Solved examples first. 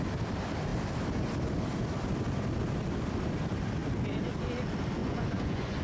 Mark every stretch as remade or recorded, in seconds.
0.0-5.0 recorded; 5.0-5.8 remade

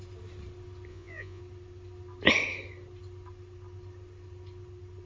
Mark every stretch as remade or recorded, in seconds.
0.0-0.9 recorded; 0.9-1.4 remade; 1.4-5.1 recorded

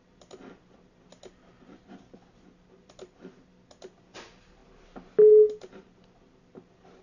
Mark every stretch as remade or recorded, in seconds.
0.0-7.0 recorded

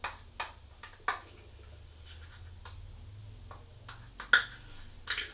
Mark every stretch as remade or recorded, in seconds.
0.0-5.3 recorded